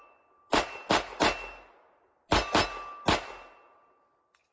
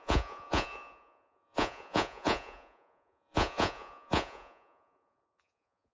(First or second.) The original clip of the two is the first